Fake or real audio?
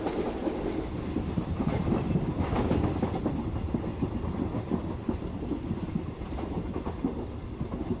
real